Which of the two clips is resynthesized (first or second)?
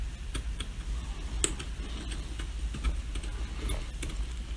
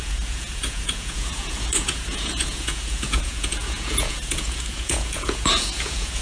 second